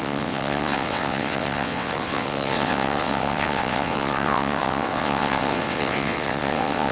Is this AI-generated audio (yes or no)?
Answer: yes